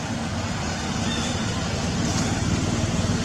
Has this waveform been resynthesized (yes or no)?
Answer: no